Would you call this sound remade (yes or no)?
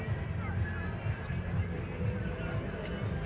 no